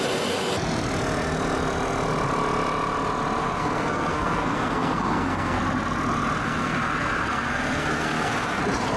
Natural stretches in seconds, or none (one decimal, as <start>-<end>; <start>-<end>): 0.0-3.4; 5.6-6.4; 8.6-9.0